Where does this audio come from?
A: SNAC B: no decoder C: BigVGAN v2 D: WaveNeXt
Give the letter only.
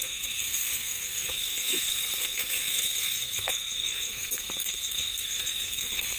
A